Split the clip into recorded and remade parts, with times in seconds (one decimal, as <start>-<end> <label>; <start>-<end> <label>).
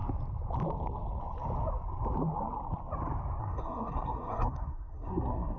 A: 0.0-3.4 recorded; 3.4-5.6 remade